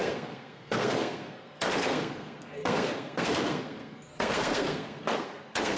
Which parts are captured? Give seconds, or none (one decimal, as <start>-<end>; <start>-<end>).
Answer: none